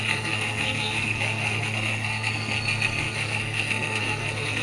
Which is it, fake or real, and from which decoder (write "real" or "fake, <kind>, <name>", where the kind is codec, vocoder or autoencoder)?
fake, codec, SNAC